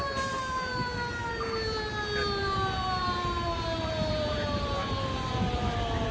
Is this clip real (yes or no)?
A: no